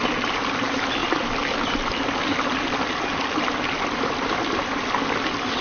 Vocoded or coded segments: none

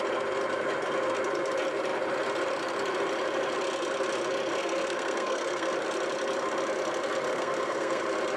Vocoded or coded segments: 4.6-5.7 (codec, SNAC); 7.3-8.0

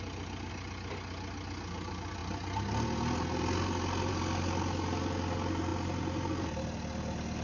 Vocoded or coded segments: none